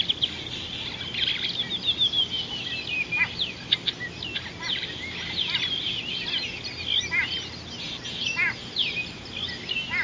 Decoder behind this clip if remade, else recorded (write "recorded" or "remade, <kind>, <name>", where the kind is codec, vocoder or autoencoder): recorded